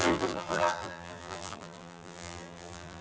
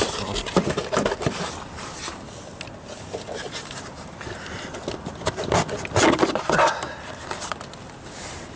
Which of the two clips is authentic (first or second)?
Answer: second